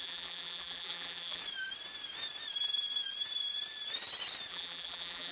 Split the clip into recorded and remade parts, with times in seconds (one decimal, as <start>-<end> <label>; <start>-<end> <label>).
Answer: 0.0-1.4 remade; 1.4-4.5 recorded; 4.5-5.3 remade